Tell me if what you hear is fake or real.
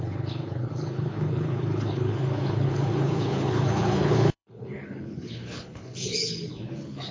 fake